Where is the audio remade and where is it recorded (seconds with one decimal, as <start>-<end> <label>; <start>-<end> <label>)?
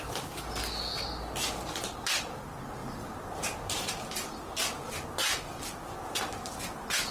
0.0-7.1 recorded